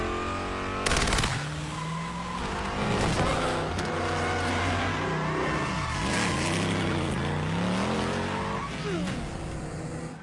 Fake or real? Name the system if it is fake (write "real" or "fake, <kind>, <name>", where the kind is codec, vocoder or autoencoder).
real